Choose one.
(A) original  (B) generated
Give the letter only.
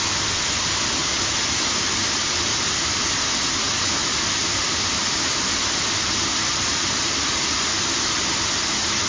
B